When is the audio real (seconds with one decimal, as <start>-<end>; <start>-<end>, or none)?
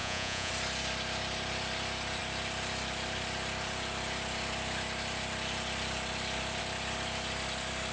0.5-7.9